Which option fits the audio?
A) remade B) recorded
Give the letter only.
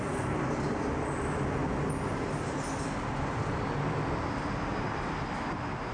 B